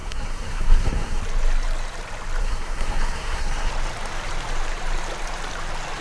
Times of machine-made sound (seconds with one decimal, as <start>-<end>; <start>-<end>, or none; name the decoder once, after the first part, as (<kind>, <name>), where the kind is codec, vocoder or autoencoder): 0.0-1.2 (codec, SNAC); 2.4-3.7

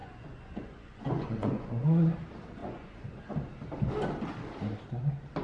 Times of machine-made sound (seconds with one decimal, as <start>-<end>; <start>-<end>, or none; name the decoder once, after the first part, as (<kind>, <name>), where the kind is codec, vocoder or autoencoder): 0.0-2.1 (vocoder, Vocos); 2.6-3.2

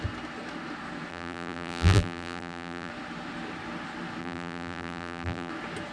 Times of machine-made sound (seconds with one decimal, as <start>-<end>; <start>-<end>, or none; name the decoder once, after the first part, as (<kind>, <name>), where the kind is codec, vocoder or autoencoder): 1.1-2.9 (vocoder, BigVGAN v2); 4.2-5.5

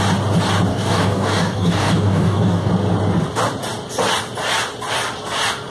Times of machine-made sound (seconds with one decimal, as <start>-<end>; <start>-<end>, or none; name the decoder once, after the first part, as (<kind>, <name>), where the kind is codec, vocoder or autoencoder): 0.7-2.7 (codec, DAC)

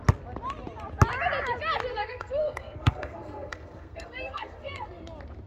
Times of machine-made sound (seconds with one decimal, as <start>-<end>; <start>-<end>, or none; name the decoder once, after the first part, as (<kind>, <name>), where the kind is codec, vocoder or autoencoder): 1.9-5.0 (codec, SNAC)